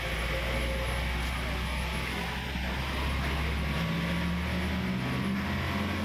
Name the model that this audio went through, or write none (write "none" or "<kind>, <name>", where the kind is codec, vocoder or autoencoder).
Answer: none